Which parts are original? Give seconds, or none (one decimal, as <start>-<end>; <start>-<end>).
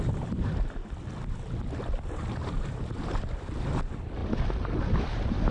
0.0-5.5